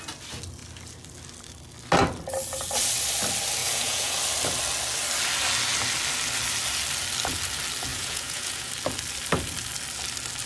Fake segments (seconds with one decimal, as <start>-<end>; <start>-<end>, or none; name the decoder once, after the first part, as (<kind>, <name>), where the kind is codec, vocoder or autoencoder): 3.6-4.2 (vocoder, Vocos); 7.9-8.7